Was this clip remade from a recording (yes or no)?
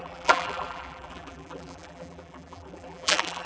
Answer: yes